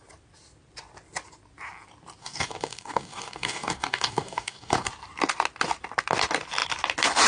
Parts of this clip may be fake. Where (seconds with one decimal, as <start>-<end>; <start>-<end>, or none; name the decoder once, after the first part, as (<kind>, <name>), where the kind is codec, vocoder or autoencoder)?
2.2-4.9 (codec, DAC)